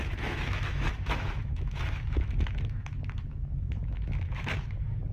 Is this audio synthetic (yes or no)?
yes